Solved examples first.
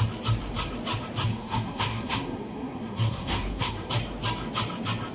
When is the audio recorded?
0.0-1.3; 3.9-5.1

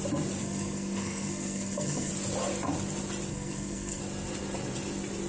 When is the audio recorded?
0.0-0.4; 2.1-3.3; 4.0-5.3

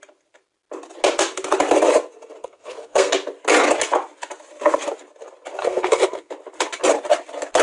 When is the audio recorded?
0.0-2.4; 3.1-5.6; 6.3-7.6

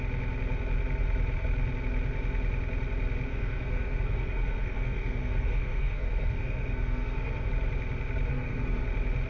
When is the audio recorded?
0.0-3.3; 7.5-8.3; 8.8-9.3

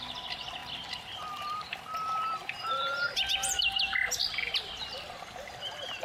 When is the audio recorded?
0.0-6.0

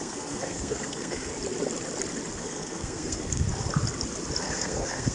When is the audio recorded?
1.3-2.4; 3.4-4.4

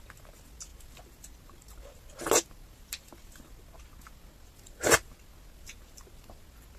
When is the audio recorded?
0.0-6.8

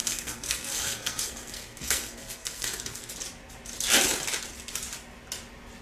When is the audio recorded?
3.1-5.8